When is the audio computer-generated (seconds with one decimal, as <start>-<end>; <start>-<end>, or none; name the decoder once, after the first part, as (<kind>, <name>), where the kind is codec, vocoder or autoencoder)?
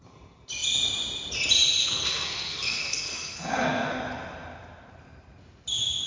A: 1.8-4.0 (codec, SNAC)